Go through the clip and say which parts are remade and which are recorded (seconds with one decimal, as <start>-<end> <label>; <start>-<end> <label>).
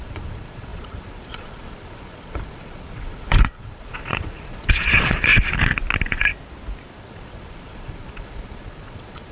0.0-5.3 remade; 5.3-6.9 recorded; 6.9-9.3 remade